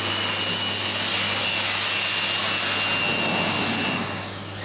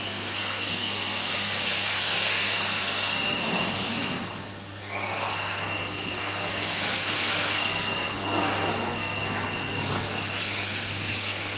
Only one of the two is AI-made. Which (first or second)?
second